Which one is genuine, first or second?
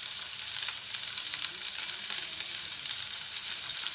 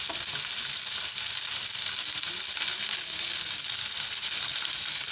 second